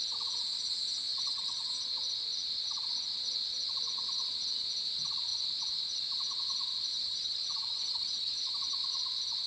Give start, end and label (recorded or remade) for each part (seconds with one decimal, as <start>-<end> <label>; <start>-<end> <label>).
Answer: 0.0-1.1 recorded; 1.1-1.7 remade; 1.7-6.9 recorded; 6.9-8.6 remade; 8.6-9.5 recorded